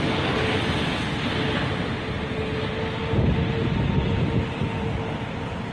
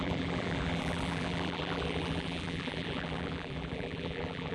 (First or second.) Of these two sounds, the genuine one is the first